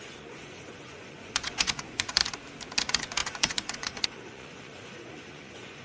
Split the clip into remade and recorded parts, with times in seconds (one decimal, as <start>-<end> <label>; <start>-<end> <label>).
0.0-2.2 remade; 2.2-2.8 recorded; 2.8-5.8 remade